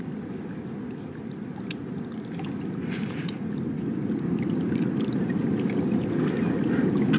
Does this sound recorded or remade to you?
recorded